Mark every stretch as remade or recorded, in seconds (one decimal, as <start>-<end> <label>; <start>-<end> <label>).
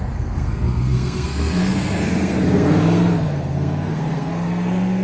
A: 0.0-5.0 remade